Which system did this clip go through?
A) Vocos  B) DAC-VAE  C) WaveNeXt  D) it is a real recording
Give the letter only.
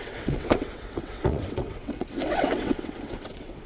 C